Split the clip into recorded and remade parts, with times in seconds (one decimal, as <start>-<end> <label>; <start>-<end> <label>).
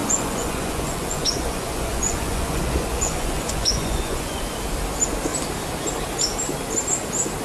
0.0-4.4 remade; 4.4-7.4 recorded